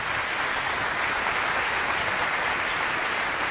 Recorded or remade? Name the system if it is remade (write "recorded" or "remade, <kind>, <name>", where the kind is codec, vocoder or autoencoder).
recorded